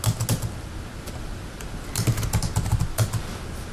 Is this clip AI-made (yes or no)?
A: no